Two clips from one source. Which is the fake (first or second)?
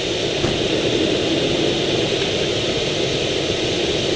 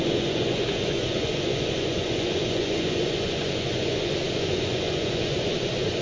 second